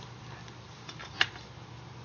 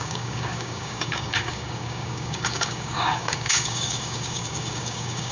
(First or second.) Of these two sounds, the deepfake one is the second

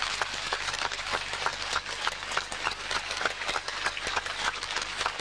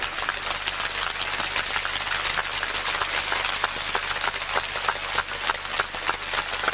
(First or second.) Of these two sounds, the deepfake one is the first